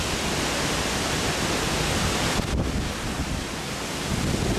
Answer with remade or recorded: recorded